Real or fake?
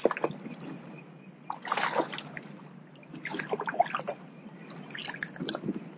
real